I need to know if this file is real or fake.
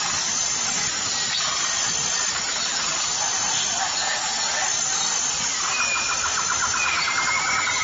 real